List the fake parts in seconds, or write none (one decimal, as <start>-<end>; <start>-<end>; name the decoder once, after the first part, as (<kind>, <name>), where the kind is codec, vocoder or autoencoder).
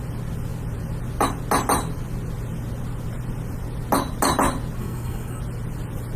4.8-5.4 (codec, SNAC)